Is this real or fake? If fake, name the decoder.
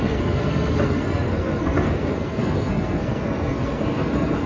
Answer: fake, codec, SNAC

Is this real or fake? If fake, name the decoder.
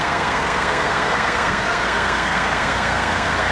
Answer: fake, codec, SNAC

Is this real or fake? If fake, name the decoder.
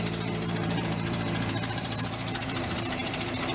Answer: fake, vocoder, BigVGAN v2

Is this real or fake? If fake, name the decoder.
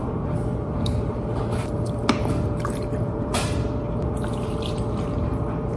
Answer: fake, vocoder, BigVGAN v2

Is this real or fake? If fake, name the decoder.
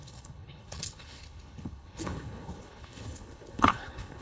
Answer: fake, codec, HILCodec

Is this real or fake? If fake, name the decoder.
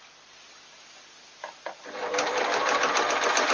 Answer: real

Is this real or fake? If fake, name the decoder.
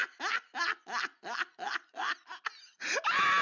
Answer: real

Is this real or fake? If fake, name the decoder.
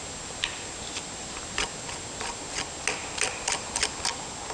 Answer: real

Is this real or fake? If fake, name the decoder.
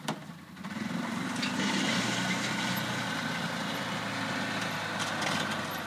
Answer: real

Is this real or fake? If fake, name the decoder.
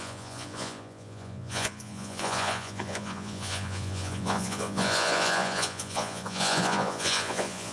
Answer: fake, vocoder, Vocos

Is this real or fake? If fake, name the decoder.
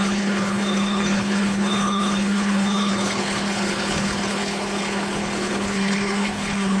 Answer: fake, codec, HILCodec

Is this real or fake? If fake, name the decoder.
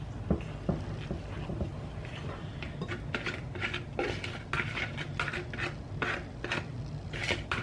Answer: real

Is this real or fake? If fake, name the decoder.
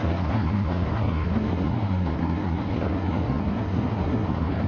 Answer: fake, codec, SNAC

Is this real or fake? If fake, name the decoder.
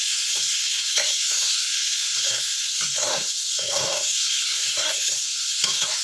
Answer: fake, codec, SNAC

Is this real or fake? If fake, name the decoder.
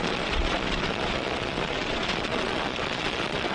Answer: fake, vocoder, Vocos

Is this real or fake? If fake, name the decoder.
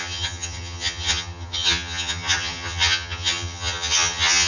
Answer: fake, vocoder, HiFi-GAN